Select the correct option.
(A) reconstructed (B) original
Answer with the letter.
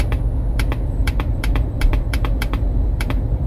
A